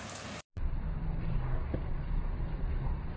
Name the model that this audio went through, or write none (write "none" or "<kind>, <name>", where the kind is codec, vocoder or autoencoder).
none